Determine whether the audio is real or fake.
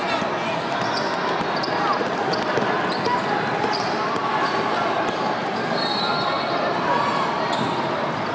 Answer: real